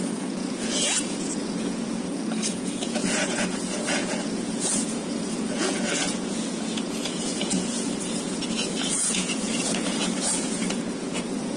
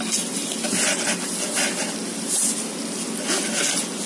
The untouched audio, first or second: second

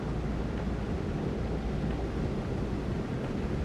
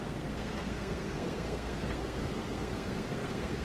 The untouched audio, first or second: first